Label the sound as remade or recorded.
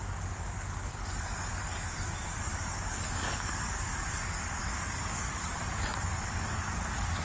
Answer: remade